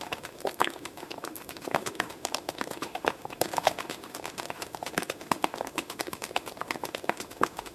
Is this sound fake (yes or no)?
yes